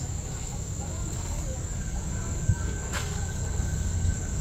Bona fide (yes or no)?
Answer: no